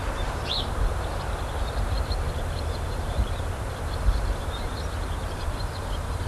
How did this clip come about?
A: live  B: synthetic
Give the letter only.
B